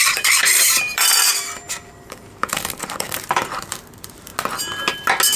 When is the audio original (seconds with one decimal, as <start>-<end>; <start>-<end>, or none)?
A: 4.3-5.4